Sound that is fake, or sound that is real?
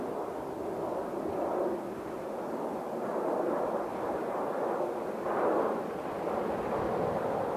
real